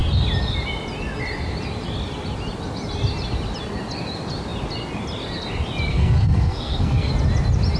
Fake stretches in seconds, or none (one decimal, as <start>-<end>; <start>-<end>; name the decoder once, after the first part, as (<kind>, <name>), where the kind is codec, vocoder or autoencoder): 5.9-7.1 (codec, SNAC)